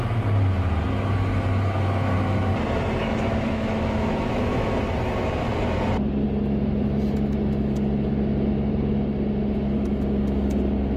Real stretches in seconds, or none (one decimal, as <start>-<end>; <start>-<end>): 0.0-3.0; 4.7-11.0